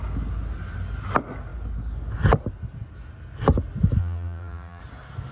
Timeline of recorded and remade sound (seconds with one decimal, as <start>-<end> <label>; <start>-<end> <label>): 0.0-4.0 recorded; 4.0-4.8 remade; 4.8-5.3 recorded